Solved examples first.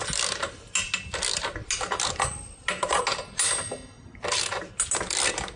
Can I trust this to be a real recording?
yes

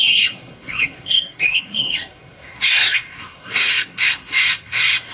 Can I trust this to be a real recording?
no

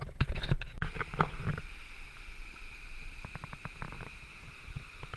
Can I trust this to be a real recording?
yes